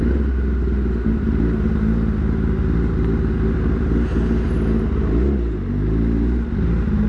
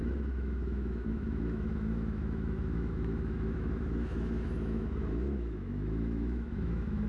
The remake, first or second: second